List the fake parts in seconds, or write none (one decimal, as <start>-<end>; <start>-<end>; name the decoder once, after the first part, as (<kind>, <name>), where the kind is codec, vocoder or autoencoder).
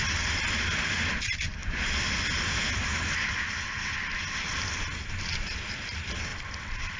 none